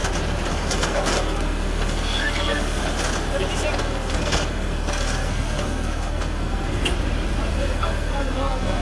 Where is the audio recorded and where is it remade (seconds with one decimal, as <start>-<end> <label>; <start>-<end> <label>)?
0.0-0.5 recorded; 0.5-2.8 remade; 2.8-3.8 recorded; 3.8-6.9 remade; 6.9-7.5 recorded; 7.5-8.8 remade